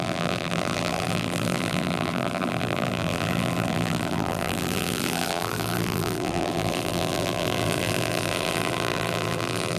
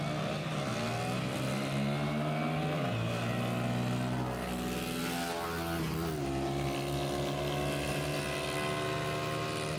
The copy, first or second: first